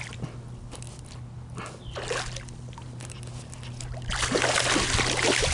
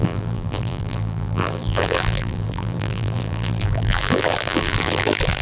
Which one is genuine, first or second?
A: first